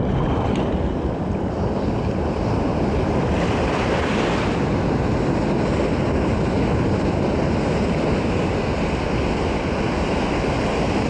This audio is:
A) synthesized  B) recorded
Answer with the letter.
B